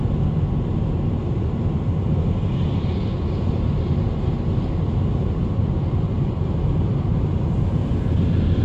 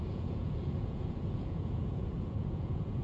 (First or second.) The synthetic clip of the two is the second